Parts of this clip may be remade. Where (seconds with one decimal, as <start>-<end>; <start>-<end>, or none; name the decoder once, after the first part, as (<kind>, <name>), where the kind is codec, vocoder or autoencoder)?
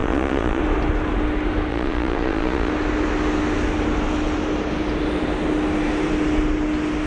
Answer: 0.0-0.6 (vocoder, Vocos); 1.7-2.7